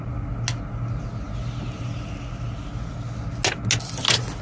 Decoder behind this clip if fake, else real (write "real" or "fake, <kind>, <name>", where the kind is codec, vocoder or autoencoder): real